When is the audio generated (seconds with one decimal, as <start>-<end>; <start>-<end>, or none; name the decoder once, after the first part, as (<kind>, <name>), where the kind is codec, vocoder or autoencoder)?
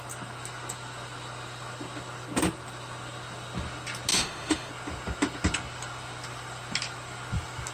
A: 4.1-4.7 (autoencoder, DAC-VAE)